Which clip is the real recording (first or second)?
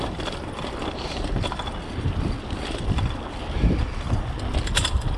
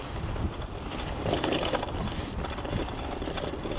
first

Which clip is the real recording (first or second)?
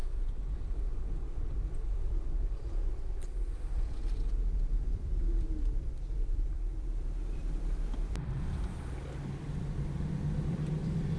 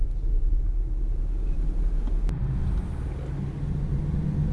second